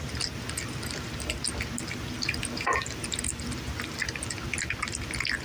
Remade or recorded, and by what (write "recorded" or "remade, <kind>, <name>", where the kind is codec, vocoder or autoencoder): recorded